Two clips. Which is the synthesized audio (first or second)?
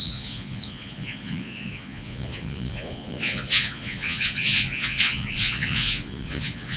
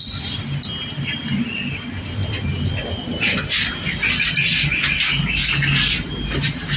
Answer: first